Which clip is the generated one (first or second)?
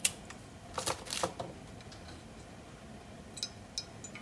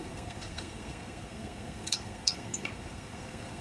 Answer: second